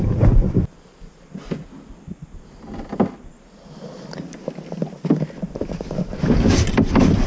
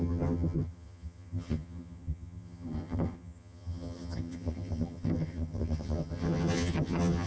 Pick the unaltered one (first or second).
first